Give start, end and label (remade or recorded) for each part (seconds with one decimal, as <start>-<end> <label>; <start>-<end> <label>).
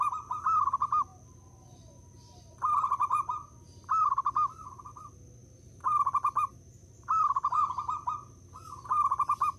0.0-9.6 recorded